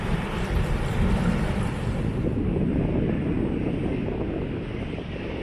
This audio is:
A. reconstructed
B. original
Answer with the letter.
B